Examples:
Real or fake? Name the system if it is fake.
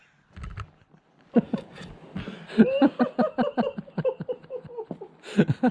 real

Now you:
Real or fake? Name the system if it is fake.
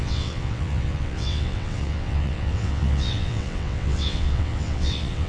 fake, vocoder, WaveNeXt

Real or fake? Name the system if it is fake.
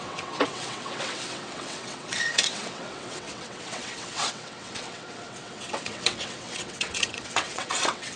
fake, vocoder, WaveNeXt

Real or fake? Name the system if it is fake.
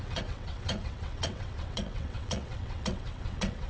fake, vocoder, WaveNeXt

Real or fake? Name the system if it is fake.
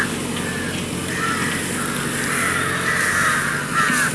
real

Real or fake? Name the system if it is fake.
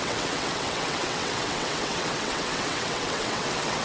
fake, vocoder, WaveNeXt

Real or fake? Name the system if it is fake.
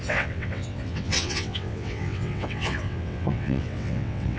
fake, vocoder, WaveNeXt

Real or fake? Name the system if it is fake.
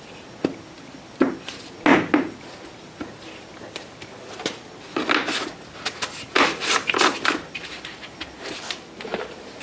real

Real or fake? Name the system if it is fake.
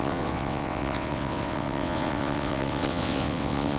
fake, vocoder, WaveNeXt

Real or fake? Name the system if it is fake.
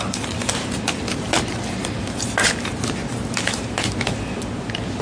real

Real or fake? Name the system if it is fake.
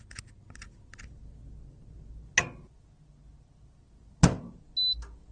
real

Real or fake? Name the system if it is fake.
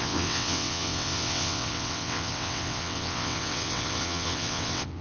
fake, vocoder, WaveNeXt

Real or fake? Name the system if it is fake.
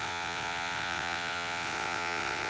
fake, vocoder, WaveNeXt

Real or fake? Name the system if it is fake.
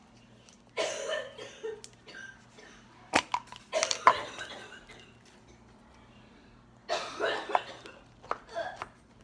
real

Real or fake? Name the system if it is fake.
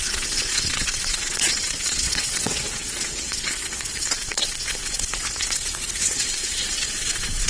fake, vocoder, WaveNeXt